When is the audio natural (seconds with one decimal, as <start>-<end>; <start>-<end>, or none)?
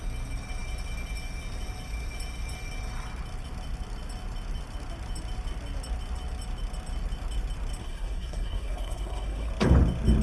0.0-7.8; 9.5-10.2